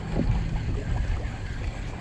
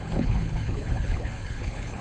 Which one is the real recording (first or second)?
first